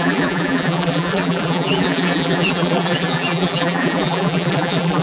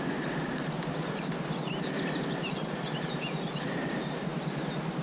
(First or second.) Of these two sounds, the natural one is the second